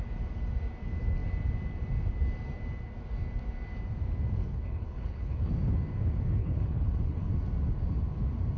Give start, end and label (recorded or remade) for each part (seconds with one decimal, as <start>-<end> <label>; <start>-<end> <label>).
0.0-4.4 recorded; 4.4-5.5 remade; 5.5-6.4 recorded; 6.4-7.3 remade; 7.3-8.6 recorded